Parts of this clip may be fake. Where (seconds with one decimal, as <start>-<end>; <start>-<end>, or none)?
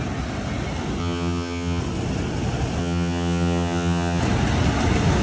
1.0-1.8; 2.8-4.2